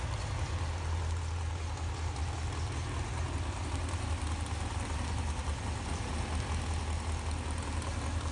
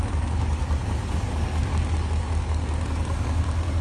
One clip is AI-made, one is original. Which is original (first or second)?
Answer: first